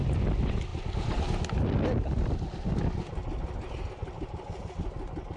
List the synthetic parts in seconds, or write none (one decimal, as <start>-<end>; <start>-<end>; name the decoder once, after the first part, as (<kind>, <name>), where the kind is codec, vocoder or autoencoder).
none